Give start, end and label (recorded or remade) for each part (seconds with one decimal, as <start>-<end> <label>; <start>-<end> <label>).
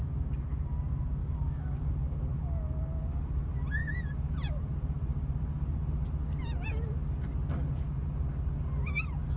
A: 0.0-1.2 recorded; 1.2-1.9 remade; 1.9-9.4 recorded